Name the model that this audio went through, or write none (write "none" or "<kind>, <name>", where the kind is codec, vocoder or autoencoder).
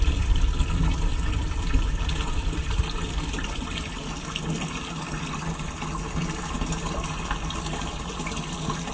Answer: none